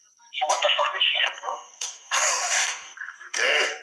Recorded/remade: remade